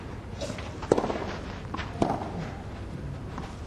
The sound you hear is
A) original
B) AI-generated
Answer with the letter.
A